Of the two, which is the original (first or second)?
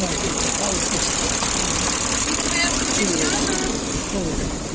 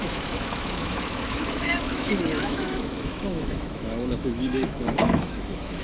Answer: first